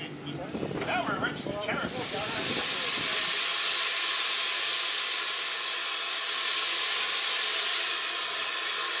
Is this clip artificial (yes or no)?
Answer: no